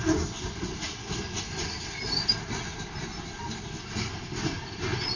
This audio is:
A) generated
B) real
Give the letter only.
B